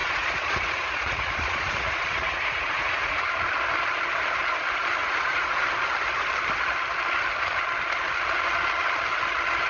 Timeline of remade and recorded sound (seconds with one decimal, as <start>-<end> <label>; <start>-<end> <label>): 0.0-3.2 remade; 3.2-5.0 recorded; 5.0-5.7 remade; 5.7-9.7 recorded